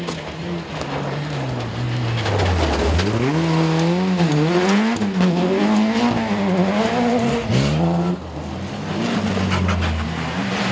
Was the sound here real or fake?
real